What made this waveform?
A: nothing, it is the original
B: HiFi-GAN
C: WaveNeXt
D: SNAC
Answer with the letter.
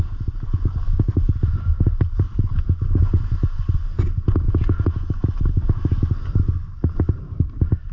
A